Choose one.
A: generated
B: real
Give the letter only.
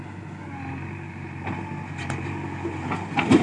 B